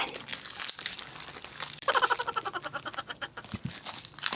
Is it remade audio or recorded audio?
recorded